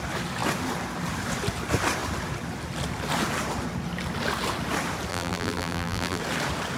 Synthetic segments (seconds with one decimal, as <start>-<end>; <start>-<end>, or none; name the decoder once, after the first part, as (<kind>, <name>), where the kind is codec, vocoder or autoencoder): 5.1-6.2 (vocoder, BigVGAN v2)